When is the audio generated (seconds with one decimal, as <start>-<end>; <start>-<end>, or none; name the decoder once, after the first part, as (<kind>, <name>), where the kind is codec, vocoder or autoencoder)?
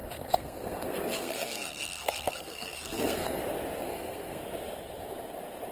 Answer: 0.0-3.4 (codec, SNAC); 3.9-4.4